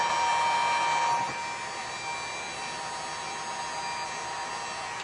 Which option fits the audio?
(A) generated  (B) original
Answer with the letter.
B